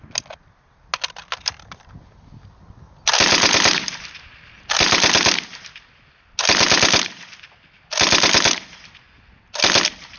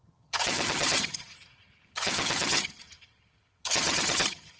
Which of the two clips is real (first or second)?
first